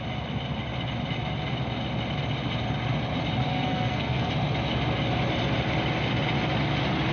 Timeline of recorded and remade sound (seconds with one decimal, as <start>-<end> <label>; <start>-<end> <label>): 0.0-3.5 recorded; 3.5-4.3 remade; 4.3-7.1 recorded